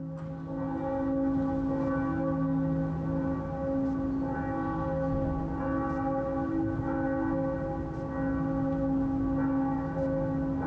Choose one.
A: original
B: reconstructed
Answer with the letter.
A